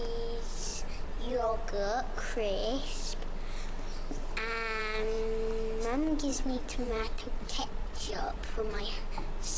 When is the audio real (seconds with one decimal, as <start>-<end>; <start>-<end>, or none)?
0.0-0.7; 1.6-6.3; 8.8-9.6